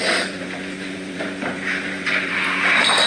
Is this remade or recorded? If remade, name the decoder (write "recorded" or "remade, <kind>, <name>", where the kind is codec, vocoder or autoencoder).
remade, vocoder, BigVGAN v2